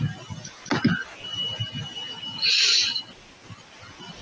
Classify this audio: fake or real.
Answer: real